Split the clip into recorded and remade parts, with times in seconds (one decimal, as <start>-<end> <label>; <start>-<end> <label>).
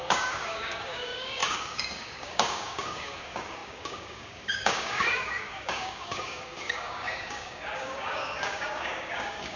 0.0-9.6 remade